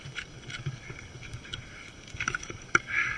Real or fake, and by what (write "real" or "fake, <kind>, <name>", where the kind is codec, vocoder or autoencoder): fake, codec, DAC